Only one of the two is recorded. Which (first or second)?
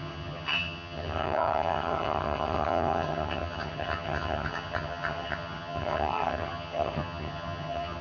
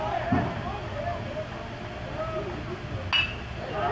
second